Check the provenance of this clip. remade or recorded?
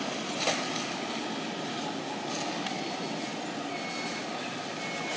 recorded